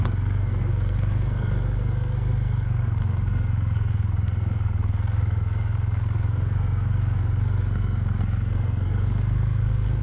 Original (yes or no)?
no